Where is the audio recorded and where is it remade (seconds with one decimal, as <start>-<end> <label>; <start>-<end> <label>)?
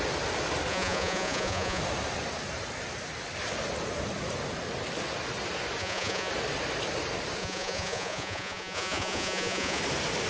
0.0-0.7 recorded; 0.7-1.8 remade; 1.8-5.8 recorded; 5.8-6.3 remade; 6.3-7.4 recorded; 7.4-9.8 remade; 9.8-10.3 recorded